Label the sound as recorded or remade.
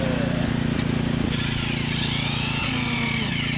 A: recorded